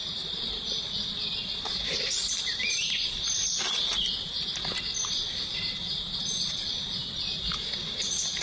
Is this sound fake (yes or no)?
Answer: no